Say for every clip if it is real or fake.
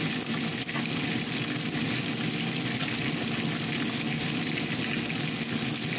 real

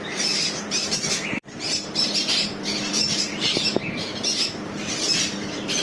fake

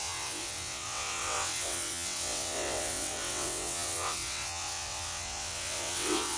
fake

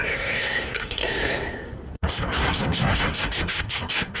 fake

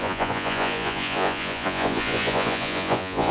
fake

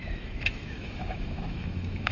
fake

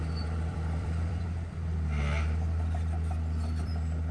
fake